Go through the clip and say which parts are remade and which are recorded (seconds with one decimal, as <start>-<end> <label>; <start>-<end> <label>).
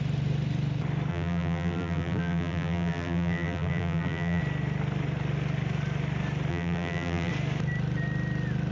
0.0-1.1 recorded; 1.1-4.4 remade; 4.4-6.5 recorded; 6.5-7.3 remade; 7.3-8.7 recorded